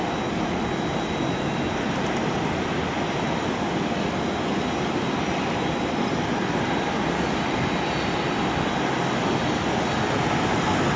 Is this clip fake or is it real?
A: real